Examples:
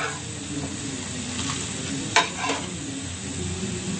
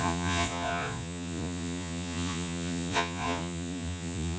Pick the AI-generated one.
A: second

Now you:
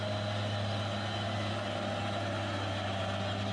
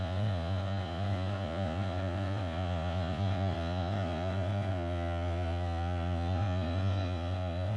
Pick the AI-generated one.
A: second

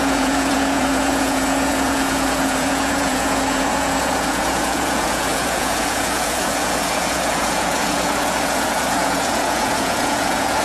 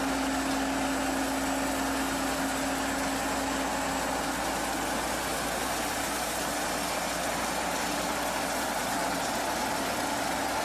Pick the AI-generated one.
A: first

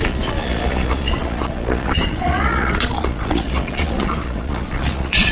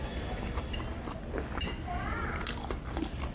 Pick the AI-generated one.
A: first